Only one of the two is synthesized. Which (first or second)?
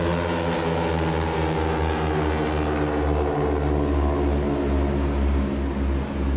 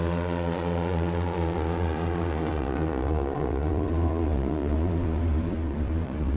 second